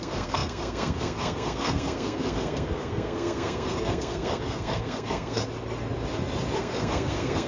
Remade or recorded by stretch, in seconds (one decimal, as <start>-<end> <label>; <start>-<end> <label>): 0.0-5.4 remade; 5.4-6.6 recorded; 6.6-7.5 remade